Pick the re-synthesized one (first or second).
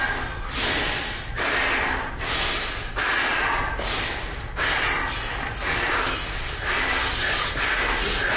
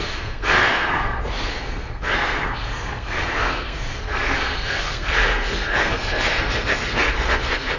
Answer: second